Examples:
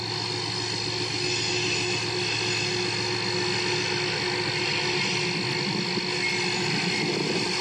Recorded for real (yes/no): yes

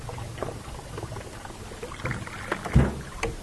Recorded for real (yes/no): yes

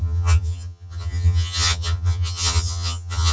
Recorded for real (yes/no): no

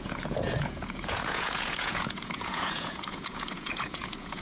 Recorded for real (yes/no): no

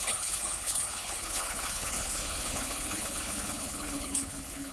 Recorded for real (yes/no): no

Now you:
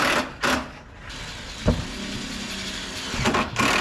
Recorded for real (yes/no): yes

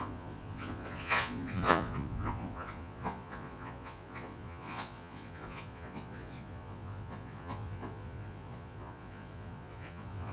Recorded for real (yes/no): no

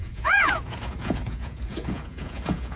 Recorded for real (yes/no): no